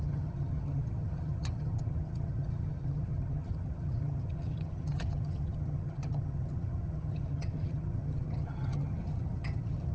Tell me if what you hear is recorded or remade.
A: remade